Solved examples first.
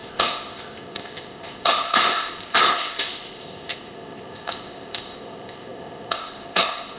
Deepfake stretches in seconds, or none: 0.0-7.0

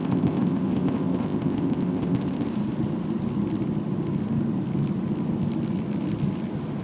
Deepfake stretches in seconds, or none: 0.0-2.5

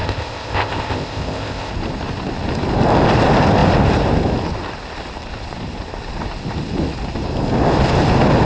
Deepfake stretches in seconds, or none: 0.0-1.7

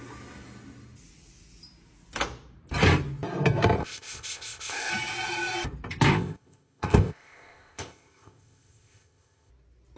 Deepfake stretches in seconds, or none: 3.8-4.9; 6.1-9.5

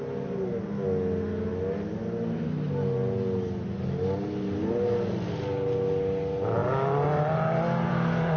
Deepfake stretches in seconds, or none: none

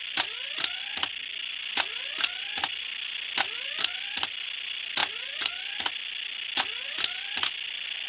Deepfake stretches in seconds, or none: none